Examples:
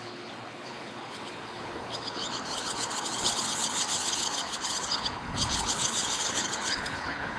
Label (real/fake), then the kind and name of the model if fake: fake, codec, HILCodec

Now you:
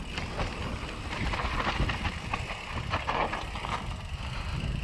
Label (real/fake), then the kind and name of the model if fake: real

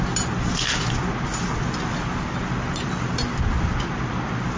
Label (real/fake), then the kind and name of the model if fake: real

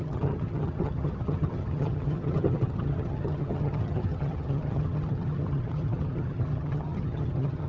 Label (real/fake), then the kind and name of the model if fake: fake, vocoder, HiFi-GAN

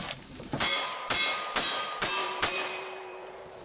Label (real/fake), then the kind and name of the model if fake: fake, vocoder, BigVGAN v2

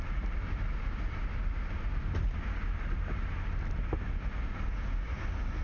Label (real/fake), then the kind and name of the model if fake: real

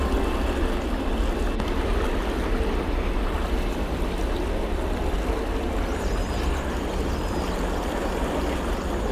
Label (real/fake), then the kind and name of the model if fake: real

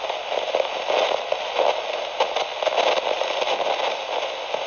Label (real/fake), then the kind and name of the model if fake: real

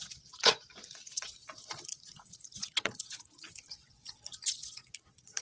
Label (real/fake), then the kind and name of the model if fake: fake, vocoder, Vocos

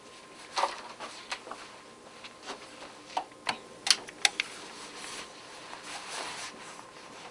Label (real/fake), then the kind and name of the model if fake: real